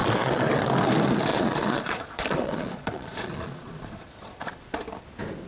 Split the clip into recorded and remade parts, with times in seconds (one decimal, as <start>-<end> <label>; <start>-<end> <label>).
0.0-0.5 remade; 0.5-1.3 recorded; 1.3-4.6 remade; 4.6-5.5 recorded